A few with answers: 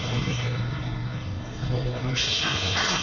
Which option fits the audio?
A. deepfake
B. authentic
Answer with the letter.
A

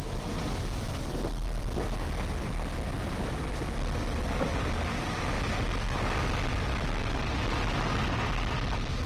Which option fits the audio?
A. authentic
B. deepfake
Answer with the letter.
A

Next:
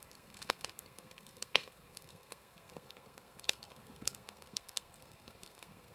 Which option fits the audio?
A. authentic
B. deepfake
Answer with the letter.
B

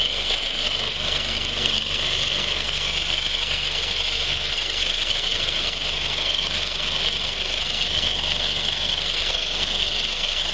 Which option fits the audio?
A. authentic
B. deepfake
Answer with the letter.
B